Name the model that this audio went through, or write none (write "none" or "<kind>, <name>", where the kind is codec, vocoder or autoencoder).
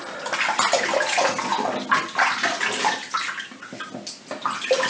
none